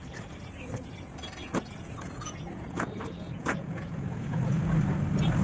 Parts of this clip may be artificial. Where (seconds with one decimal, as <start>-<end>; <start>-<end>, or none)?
1.4-4.6